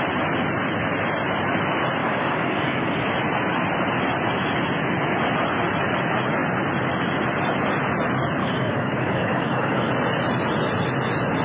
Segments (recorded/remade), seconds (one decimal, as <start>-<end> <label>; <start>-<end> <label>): 0.0-2.0 recorded; 2.0-3.1 remade; 3.1-8.4 recorded; 8.4-9.9 remade; 9.9-11.4 recorded